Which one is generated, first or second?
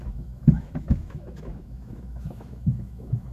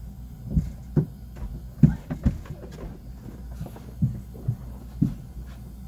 first